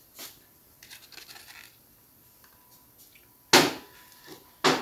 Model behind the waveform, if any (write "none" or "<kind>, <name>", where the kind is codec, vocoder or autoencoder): none